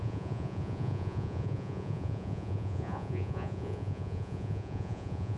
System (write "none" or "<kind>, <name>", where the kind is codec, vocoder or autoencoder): vocoder, Vocos